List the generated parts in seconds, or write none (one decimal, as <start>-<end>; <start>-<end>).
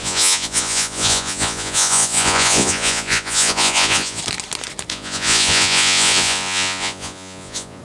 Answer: 0.0-4.2; 4.9-7.8